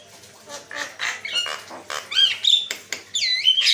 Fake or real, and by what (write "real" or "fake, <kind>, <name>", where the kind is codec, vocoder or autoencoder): real